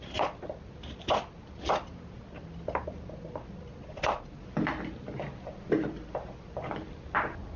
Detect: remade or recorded recorded